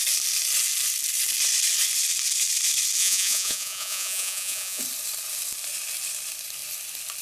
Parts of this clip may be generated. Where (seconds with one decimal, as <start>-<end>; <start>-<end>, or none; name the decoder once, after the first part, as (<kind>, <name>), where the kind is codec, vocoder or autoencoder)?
3.0-4.8 (vocoder, Vocos)